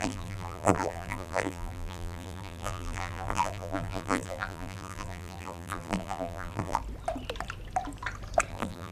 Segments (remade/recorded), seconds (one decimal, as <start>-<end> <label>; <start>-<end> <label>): 0.0-6.8 remade; 6.8-8.5 recorded; 8.5-8.9 remade